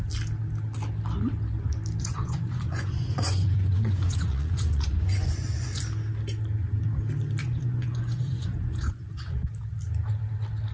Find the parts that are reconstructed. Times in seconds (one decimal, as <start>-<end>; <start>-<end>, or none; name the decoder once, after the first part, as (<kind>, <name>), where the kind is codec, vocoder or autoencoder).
2.0-5.8 (vocoder, Vocos); 7.4-9.5